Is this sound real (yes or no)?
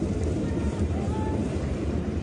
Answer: no